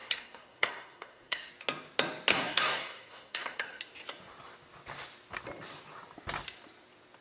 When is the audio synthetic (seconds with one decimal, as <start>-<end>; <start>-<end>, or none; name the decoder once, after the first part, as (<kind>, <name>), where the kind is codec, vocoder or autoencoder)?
0.0-1.5 (codec, SNAC); 2.3-3.8